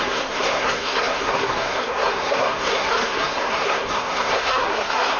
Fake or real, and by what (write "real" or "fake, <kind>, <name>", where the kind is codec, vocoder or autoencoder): fake, codec, SNAC